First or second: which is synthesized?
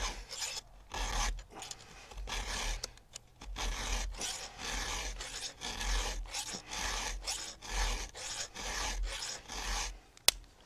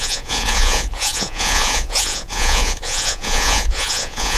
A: second